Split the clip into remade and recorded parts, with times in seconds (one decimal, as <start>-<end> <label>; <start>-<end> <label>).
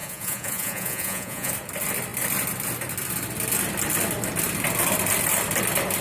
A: 0.0-1.5 remade; 1.5-6.0 recorded